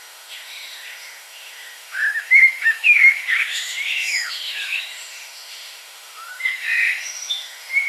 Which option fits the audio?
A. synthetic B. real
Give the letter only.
A